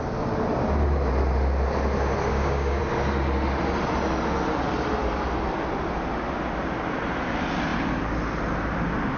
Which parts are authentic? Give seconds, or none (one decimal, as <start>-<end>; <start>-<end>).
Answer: 0.0-2.3; 2.8-9.2